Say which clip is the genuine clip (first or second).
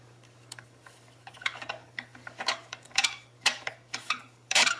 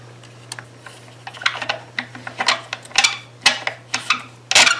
second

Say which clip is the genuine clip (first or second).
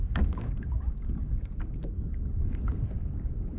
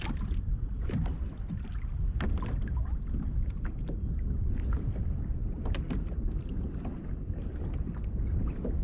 second